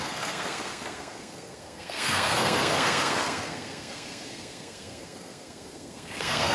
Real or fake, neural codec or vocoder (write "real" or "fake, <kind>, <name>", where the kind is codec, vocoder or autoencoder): fake, codec, SNAC